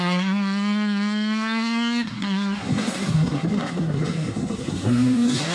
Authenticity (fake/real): fake